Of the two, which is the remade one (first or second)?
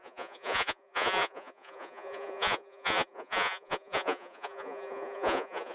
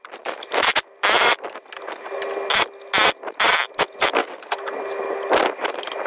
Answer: first